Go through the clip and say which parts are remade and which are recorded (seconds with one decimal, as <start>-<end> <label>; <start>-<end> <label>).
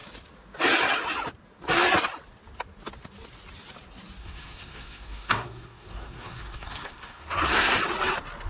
0.0-4.2 recorded; 4.2-7.8 remade; 7.8-8.5 recorded